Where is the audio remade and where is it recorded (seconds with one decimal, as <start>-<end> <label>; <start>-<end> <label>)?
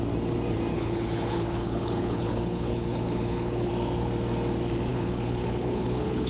0.0-0.7 recorded; 0.7-3.7 remade; 3.7-4.9 recorded; 4.9-6.3 remade